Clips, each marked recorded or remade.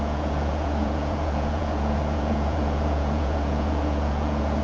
remade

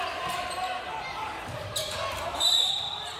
remade